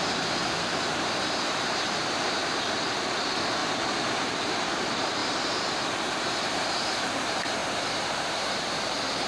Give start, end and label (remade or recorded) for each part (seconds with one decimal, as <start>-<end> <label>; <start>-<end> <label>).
0.0-2.4 remade; 2.4-3.0 recorded; 3.0-3.6 remade; 3.6-4.2 recorded; 4.2-9.3 remade